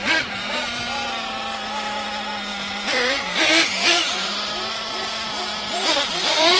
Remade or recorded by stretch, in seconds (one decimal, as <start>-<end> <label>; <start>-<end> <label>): 0.0-0.8 remade; 0.8-2.5 recorded; 2.5-6.6 remade